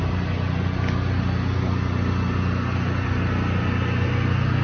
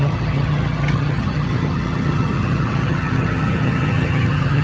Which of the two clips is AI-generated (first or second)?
second